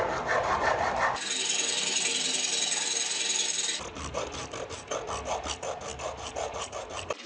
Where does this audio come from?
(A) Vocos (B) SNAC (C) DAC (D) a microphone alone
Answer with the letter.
D